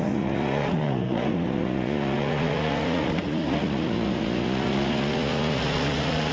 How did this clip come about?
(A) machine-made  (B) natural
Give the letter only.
A